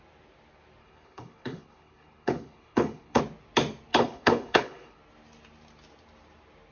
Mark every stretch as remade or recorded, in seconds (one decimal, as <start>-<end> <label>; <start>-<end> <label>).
0.0-0.8 recorded; 0.8-3.2 remade; 3.2-3.9 recorded; 3.9-5.0 remade; 5.0-6.7 recorded